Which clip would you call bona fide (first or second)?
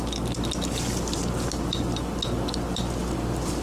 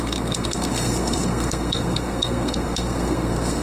first